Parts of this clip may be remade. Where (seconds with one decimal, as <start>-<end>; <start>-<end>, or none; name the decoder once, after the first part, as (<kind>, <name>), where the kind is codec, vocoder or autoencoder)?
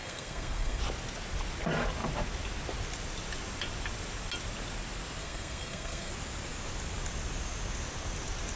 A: 0.0-0.8 (codec, SNAC); 5.2-6.1